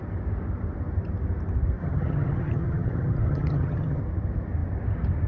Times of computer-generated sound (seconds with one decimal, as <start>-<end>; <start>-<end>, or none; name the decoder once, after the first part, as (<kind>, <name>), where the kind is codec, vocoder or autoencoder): 1.8-4.0 (vocoder, HiFi-GAN)